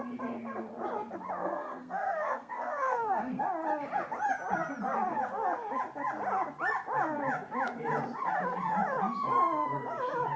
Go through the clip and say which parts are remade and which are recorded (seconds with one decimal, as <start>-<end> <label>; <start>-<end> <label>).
0.0-1.4 recorded; 1.4-3.4 remade; 3.4-10.4 recorded